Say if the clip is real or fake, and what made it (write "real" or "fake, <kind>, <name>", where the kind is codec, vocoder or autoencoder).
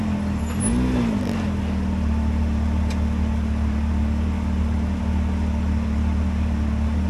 real